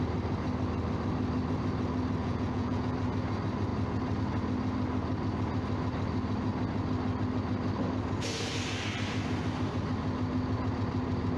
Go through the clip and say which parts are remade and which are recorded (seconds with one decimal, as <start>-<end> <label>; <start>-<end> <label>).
0.0-2.2 recorded; 2.2-2.9 remade; 2.9-11.4 recorded